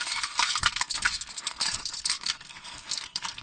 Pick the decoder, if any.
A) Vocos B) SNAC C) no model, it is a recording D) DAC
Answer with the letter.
B